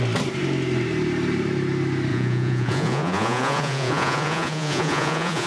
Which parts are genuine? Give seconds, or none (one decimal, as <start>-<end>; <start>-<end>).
0.0-2.1